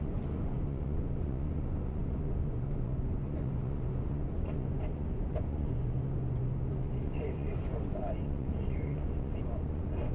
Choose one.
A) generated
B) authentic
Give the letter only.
A